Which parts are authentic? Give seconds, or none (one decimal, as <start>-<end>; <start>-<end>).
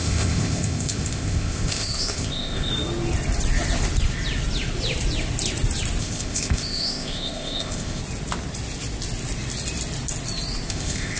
2.7-6.0; 8.0-10.7